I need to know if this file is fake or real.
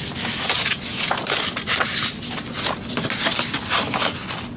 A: real